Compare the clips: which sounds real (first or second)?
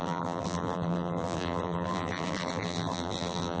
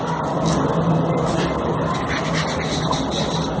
second